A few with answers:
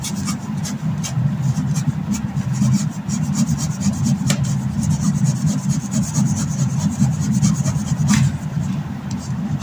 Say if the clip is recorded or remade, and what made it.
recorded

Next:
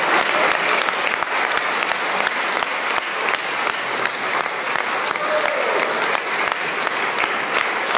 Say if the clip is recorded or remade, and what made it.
recorded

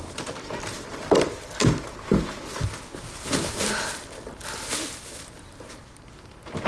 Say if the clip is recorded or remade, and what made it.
recorded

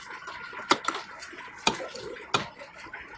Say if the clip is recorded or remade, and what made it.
recorded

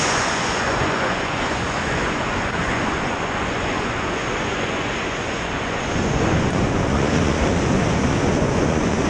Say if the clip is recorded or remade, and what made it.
remade, vocoder, Vocos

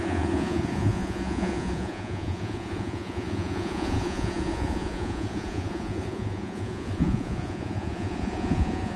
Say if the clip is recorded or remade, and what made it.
remade, vocoder, Vocos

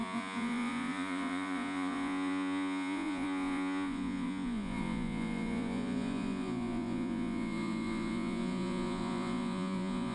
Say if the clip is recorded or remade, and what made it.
remade, vocoder, Vocos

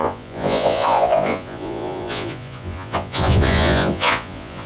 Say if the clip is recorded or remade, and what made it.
remade, vocoder, Vocos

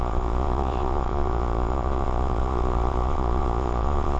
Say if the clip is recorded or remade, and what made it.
remade, vocoder, Vocos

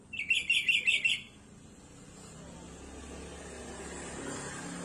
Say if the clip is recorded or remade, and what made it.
recorded